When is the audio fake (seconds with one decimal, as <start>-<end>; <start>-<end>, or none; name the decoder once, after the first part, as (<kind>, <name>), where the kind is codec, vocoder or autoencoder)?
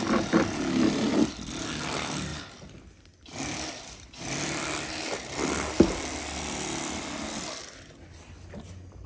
none